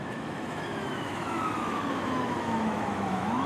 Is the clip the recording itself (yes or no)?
no